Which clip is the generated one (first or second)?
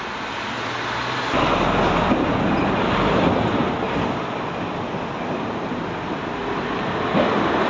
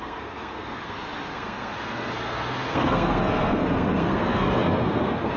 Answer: second